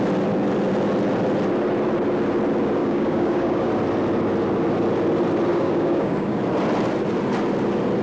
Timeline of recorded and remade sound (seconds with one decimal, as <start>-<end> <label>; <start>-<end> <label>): 0.0-2.8 recorded; 2.8-3.7 remade; 3.7-5.5 recorded; 5.5-6.4 remade; 6.4-8.0 recorded

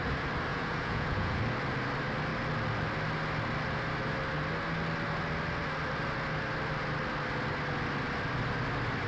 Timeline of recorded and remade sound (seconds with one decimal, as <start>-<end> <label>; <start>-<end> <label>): 0.0-0.5 recorded; 0.5-1.4 remade; 1.4-9.1 recorded

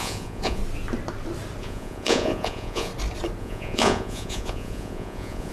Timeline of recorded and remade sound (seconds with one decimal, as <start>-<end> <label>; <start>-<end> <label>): 0.0-0.6 remade; 0.6-1.6 recorded; 1.6-2.9 remade; 2.9-3.4 recorded; 3.4-5.5 remade

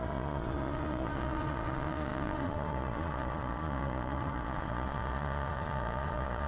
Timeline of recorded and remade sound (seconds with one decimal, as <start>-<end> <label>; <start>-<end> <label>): 0.0-6.5 remade

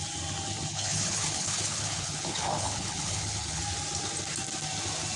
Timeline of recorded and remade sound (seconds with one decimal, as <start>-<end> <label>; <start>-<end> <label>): 0.0-0.7 recorded; 0.7-3.6 remade; 3.6-5.2 recorded

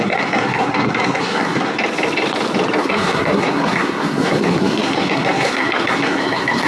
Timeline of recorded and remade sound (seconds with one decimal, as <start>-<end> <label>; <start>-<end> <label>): 0.0-1.7 remade; 1.7-2.8 recorded; 2.8-6.7 remade

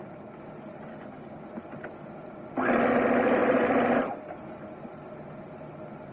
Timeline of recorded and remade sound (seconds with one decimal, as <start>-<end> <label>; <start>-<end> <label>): 0.0-0.9 recorded; 0.9-1.4 remade; 1.4-6.1 recorded